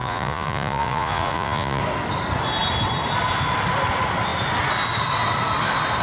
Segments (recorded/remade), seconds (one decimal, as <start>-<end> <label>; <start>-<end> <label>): 0.0-1.8 remade; 1.8-6.0 recorded